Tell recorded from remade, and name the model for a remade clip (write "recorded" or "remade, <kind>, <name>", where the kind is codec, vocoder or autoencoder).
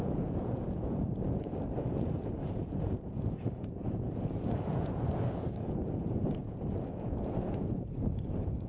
remade, vocoder, Vocos